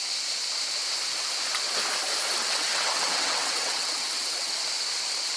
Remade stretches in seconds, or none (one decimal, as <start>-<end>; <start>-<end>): 2.4-4.5